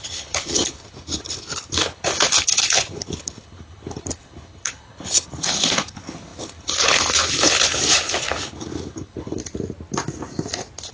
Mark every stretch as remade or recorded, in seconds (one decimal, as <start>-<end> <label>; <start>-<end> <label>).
0.0-9.4 remade; 9.4-10.9 recorded